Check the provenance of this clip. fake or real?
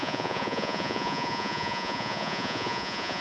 fake